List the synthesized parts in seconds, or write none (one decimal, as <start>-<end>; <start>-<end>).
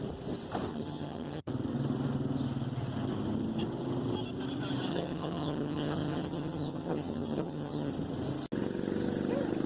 0.7-1.5; 4.9-7.9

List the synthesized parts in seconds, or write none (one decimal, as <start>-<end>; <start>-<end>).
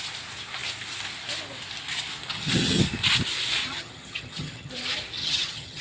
2.3-2.8; 3.6-4.7; 5.2-5.8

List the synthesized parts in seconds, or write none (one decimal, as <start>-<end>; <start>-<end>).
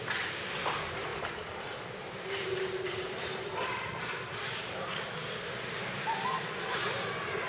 1.1-3.9